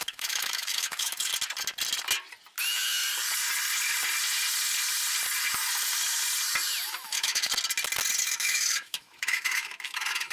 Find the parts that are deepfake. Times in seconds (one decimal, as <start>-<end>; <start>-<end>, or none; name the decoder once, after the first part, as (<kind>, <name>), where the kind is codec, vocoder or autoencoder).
0.0-1.3 (autoencoder, DAC-VAE); 2.6-3.0; 6.9-7.5; 8.2-10.3